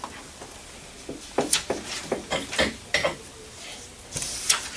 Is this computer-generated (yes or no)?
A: no